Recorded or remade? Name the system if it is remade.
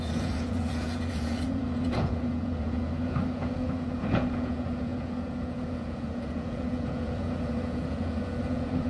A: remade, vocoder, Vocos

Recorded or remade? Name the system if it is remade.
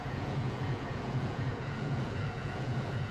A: remade, vocoder, Vocos